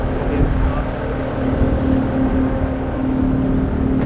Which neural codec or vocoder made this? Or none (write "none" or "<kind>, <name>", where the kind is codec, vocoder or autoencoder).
none